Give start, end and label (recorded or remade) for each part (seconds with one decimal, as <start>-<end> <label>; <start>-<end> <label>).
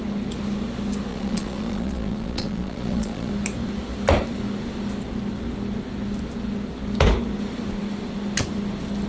0.0-1.1 recorded; 1.1-3.3 remade; 3.3-9.1 recorded